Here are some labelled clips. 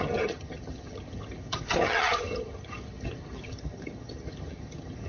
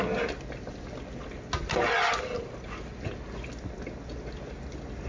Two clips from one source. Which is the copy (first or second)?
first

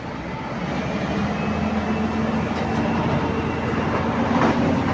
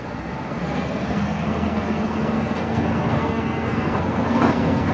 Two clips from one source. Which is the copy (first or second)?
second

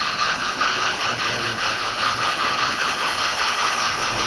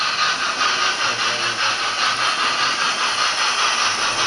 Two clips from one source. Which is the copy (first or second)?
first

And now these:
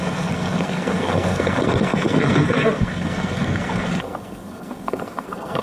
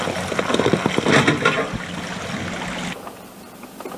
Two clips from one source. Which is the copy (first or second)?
first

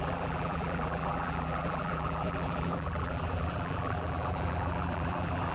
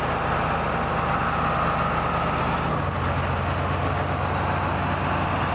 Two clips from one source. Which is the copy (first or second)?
first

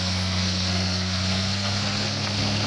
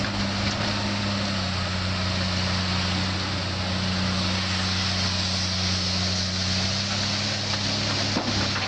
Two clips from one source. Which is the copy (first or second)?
first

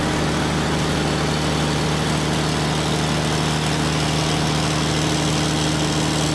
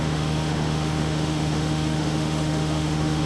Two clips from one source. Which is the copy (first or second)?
second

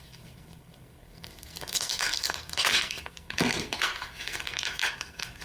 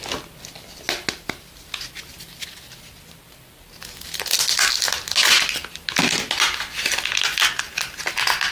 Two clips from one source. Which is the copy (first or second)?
first